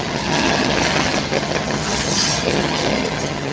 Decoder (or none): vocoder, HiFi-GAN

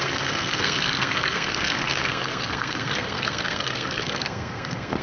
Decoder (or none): codec, SNAC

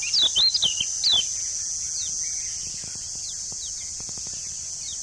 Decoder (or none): none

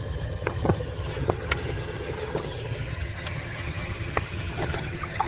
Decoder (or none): vocoder, HiFi-GAN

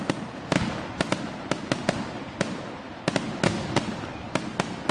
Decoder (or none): none